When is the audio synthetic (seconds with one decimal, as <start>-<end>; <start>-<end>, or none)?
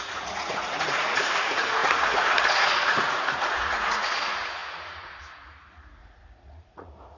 0.0-7.2